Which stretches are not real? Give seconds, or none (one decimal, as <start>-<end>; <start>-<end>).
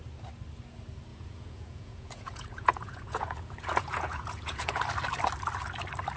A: 1.1-4.8